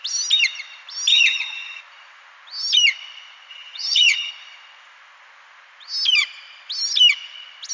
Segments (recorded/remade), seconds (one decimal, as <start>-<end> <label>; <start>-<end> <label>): 0.0-1.1 recorded; 1.1-1.8 remade; 1.8-3.5 recorded; 3.5-4.3 remade; 4.3-7.7 recorded